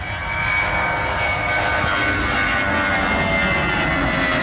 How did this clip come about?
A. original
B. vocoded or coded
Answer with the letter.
A